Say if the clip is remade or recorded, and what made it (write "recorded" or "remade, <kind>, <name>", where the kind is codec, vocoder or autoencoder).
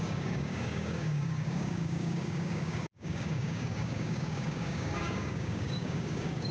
remade, codec, DAC